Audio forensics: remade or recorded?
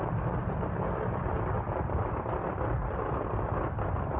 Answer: recorded